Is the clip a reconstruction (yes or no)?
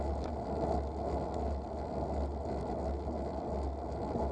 no